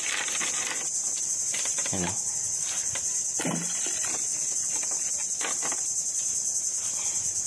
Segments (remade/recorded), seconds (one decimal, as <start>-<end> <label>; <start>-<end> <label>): 0.0-7.5 recorded